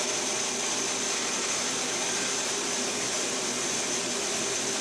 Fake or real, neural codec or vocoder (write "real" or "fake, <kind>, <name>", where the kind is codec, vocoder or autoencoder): real